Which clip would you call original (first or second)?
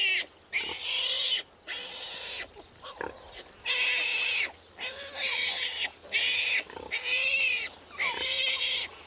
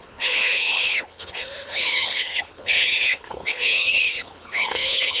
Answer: first